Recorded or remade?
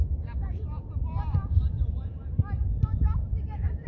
remade